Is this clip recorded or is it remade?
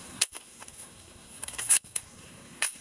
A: remade